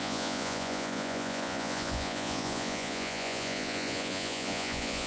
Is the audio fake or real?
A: fake